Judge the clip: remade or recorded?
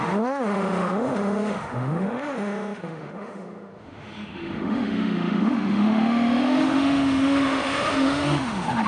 remade